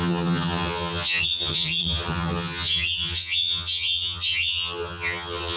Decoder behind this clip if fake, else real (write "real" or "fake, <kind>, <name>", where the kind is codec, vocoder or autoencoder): fake, vocoder, HiFi-GAN